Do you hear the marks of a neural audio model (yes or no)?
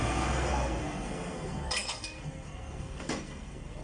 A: yes